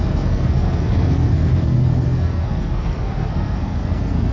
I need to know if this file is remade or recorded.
remade